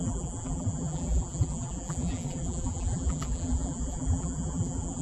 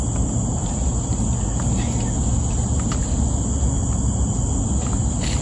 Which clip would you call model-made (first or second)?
first